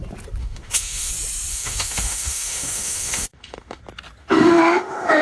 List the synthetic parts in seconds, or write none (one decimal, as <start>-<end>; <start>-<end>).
0.4-1.1; 1.5-3.8; 4.2-5.2